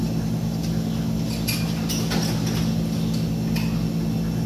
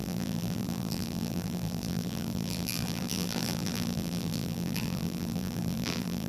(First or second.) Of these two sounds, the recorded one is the first